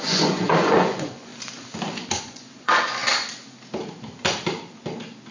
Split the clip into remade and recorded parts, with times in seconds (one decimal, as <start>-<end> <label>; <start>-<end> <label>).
0.0-1.3 remade; 1.3-2.2 recorded; 2.2-3.0 remade; 3.0-5.3 recorded